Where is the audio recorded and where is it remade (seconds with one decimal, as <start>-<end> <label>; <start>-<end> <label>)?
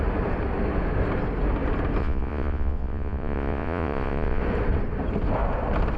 0.0-2.0 recorded; 2.0-4.4 remade; 4.4-6.0 recorded